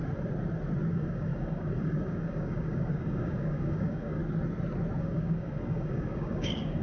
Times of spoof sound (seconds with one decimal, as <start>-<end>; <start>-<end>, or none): 0.9-4.2; 5.0-6.8